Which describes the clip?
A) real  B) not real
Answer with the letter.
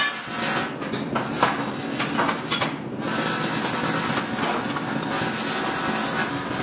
A